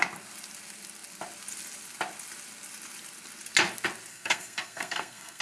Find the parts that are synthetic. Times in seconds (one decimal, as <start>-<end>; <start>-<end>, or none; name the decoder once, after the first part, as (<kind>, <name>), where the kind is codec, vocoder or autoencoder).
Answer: 4.1-5.4 (codec, SNAC)